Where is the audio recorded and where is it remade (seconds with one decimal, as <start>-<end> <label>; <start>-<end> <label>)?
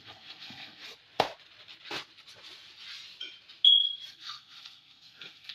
0.0-0.8 remade; 0.8-4.1 recorded; 4.1-5.5 remade